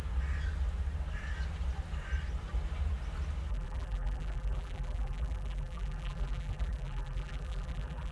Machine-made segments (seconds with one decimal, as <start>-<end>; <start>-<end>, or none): 3.5-8.1